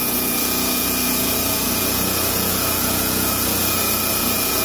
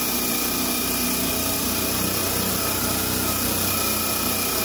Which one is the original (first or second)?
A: second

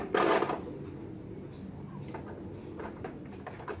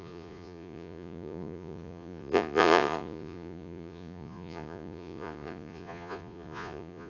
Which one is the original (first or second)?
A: first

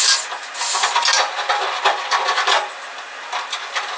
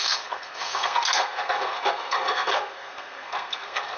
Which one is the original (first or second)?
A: first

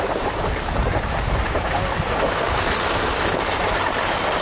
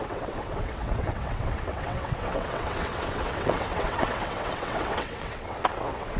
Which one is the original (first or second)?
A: first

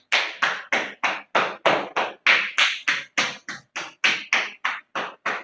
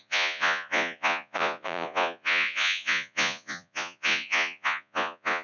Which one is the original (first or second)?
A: first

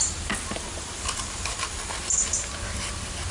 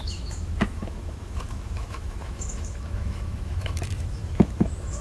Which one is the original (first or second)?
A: first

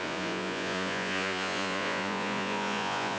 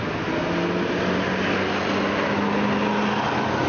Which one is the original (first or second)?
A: second